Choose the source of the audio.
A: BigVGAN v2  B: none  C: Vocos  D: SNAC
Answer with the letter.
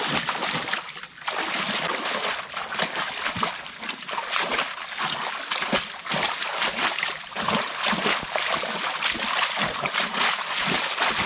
B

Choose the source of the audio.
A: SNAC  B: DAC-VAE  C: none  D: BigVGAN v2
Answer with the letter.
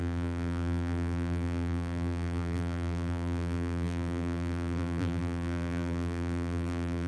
D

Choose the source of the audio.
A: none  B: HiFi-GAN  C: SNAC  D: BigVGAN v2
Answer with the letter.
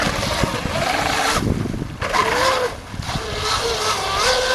A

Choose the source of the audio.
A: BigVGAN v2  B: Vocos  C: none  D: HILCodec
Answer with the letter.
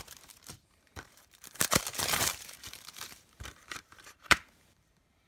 A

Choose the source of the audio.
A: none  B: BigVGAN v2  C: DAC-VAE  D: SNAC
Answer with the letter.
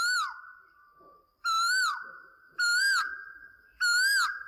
B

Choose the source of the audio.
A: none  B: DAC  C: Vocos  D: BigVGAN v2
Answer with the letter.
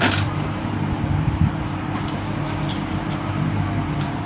D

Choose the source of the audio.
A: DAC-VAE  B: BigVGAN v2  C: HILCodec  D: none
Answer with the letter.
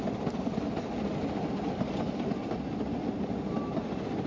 D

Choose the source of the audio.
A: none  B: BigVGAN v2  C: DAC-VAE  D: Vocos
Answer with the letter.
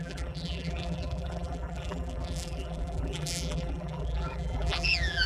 B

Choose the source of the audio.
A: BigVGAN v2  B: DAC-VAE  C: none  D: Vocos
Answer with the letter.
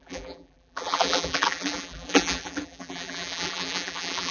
A